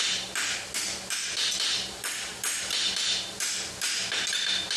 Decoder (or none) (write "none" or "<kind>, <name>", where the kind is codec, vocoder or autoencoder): none